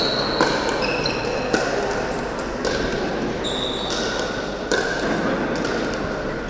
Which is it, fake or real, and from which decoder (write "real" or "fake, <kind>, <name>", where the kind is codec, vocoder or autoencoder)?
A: real